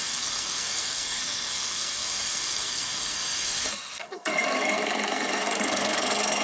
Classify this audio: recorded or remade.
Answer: remade